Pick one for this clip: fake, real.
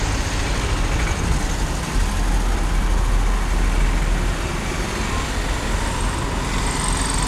real